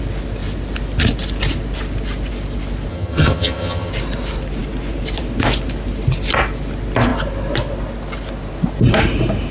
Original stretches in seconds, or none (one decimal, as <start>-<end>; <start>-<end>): 0.0-2.9; 3.9-9.5